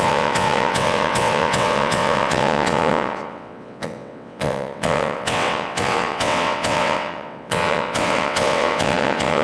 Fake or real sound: fake